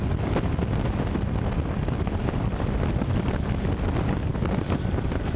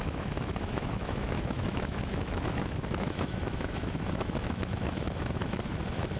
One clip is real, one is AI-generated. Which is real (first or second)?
first